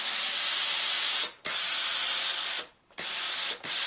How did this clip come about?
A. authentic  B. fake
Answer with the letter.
A